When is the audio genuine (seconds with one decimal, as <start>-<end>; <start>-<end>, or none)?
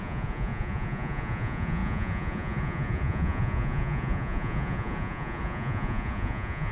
none